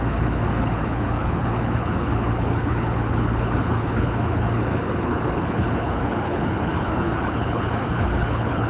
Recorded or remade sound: remade